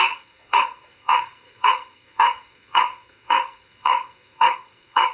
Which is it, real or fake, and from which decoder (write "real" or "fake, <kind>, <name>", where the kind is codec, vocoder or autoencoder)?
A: fake, codec, SNAC